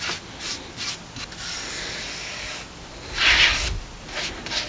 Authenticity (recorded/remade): recorded